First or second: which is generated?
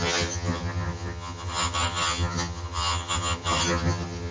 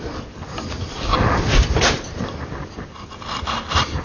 first